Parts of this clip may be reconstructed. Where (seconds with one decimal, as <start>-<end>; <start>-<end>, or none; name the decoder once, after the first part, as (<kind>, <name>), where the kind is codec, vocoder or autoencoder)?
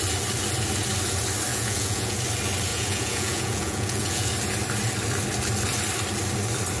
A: 1.5-2.2 (vocoder, Vocos); 2.7-4.3